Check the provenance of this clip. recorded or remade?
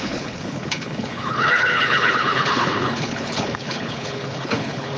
remade